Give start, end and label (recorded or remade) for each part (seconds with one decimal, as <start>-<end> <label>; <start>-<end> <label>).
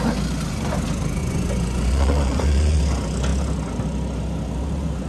0.0-1.2 recorded; 1.2-2.8 remade; 2.8-5.1 recorded